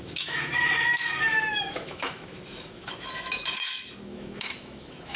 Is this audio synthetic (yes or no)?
yes